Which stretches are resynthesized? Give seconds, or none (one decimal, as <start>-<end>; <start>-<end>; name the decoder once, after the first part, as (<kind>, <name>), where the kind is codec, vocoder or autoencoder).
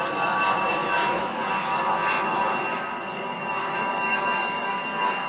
0.8-1.9 (codec, DAC); 3.1-5.3